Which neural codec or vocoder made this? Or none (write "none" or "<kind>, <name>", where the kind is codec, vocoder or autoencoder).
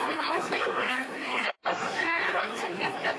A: codec, SNAC